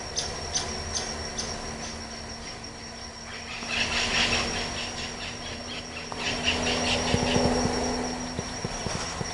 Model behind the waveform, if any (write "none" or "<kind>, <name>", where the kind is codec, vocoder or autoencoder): none